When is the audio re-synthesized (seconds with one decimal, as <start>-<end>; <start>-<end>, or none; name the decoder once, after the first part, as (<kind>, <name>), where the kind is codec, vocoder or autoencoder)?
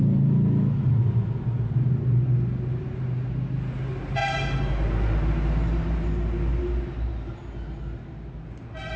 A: none